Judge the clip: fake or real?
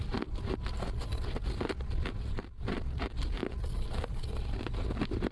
real